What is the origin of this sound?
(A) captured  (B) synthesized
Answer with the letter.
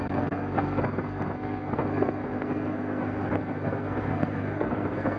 B